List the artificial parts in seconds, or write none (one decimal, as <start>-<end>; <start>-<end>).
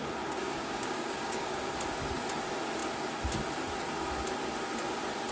0.4-1.7